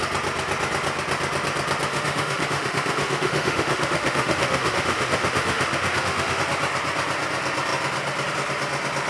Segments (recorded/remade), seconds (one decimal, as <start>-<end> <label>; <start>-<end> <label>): 0.0-1.9 recorded; 1.9-6.4 remade; 6.4-9.1 recorded